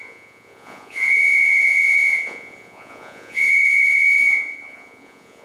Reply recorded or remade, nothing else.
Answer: remade